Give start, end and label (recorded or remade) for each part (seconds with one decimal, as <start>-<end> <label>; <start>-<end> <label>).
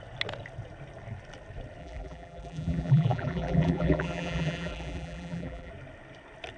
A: 0.0-1.8 recorded; 1.8-5.7 remade; 5.7-6.6 recorded